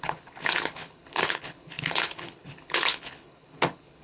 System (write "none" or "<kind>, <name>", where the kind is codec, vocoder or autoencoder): codec, HILCodec